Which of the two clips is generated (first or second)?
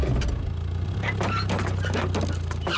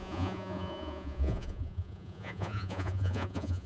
second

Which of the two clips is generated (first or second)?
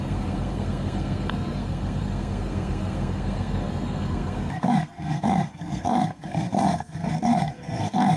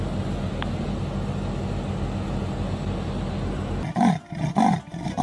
first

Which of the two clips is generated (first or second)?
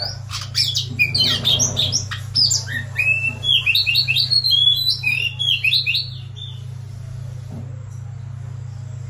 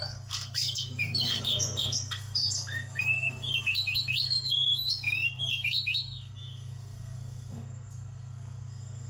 second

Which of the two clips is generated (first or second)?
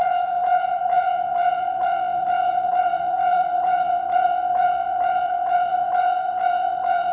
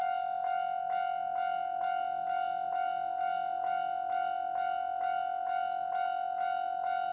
first